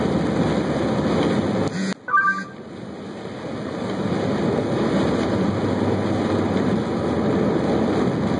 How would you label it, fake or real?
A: real